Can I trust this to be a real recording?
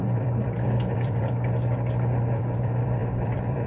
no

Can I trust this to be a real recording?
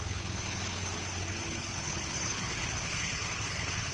no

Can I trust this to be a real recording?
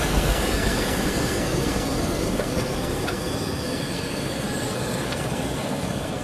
no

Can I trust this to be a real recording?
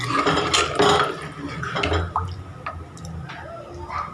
yes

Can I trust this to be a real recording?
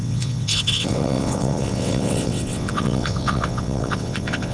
no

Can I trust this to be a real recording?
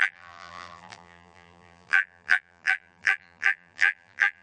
no